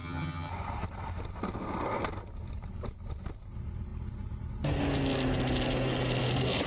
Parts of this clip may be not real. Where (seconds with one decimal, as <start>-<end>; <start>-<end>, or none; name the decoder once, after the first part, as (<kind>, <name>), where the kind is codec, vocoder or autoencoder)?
0.0-0.5 (vocoder, HiFi-GAN)